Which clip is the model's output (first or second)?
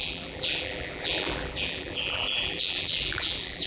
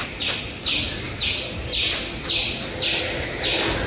first